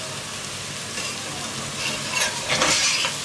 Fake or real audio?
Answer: real